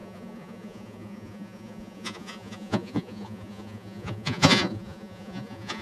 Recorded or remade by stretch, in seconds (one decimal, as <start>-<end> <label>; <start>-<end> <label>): 0.0-5.8 remade